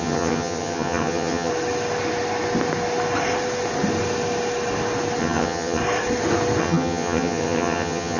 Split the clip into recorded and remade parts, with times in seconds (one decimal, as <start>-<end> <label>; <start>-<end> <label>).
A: 0.0-1.5 remade; 1.5-5.2 recorded; 5.2-5.8 remade; 5.8-6.6 recorded; 6.6-8.2 remade